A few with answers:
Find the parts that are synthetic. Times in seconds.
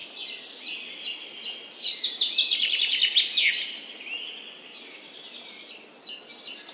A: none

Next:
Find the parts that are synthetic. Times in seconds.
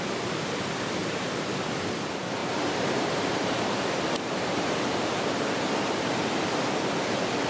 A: 1.0-1.5 (vocoder, BigVGAN v2); 2.4-4.8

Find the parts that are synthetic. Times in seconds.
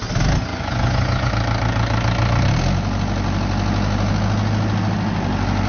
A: 0.5-1.3 (vocoder, Vocos)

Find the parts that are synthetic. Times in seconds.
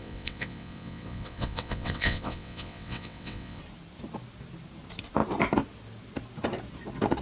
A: 0.0-3.6 (vocoder, WaveNeXt)